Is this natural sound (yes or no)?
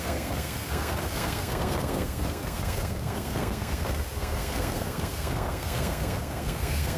no